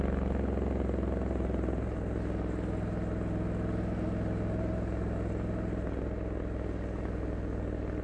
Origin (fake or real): real